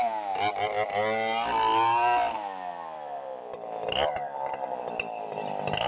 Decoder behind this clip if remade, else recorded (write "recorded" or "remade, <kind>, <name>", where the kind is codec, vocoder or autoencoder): recorded